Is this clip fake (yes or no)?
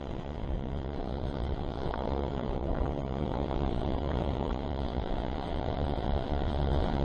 yes